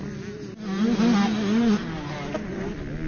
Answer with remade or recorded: recorded